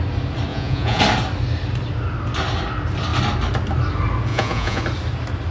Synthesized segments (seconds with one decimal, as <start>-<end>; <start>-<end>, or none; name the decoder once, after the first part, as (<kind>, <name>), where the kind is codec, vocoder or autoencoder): 0.5-1.0 (vocoder, Vocos); 4.3-4.8